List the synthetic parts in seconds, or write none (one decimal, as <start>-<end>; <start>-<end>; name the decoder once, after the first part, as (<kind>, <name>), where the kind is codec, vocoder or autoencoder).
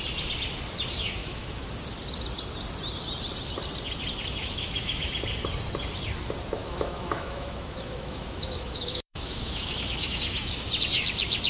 1.2-1.7 (autoencoder, DAC-VAE); 4.4-5.1; 6.6-10.5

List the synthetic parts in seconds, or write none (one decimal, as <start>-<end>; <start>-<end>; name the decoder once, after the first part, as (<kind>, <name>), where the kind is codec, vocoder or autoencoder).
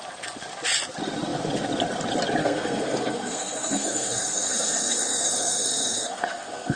2.4-6.8 (codec, SNAC)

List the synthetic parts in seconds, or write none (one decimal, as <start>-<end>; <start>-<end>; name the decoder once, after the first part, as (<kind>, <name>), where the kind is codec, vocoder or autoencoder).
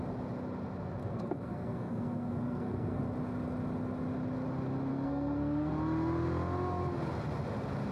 1.0-3.0 (codec, SNAC); 4.9-5.7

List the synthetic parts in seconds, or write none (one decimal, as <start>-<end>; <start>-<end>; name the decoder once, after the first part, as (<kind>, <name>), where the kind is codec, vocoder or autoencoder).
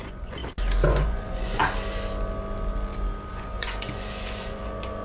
0.0-0.4 (vocoder, Vocos); 0.9-1.6; 3.3-5.0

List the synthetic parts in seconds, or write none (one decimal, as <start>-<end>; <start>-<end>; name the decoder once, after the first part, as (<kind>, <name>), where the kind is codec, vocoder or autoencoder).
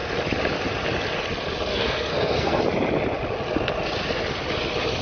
1.7-2.6 (codec, SNAC)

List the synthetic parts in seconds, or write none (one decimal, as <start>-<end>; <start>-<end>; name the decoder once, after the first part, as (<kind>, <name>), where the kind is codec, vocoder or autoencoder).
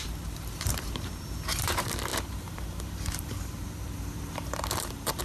0.0-5.2 (vocoder, BigVGAN v2)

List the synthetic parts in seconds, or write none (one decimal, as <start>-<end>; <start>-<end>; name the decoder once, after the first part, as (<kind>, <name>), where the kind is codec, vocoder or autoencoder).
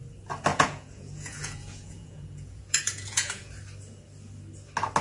0.5-3.5 (vocoder, Vocos)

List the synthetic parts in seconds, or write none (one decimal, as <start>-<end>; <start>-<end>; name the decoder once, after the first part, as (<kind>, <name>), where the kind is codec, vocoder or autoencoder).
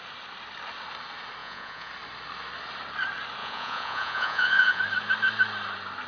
1.4-1.9 (vocoder, Vocos); 3.4-4.8